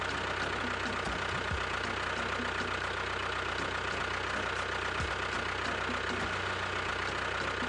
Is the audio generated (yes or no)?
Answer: no